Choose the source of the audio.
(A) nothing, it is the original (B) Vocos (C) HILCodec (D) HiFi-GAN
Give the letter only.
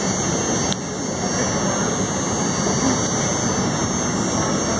A